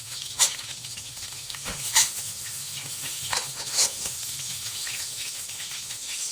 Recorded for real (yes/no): no